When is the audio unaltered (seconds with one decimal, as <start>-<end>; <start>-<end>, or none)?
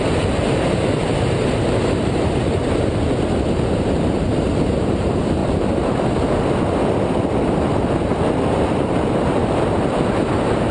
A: 5.4-8.7